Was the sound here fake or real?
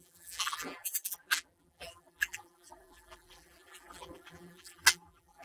fake